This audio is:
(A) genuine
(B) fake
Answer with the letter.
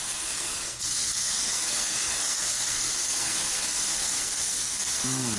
B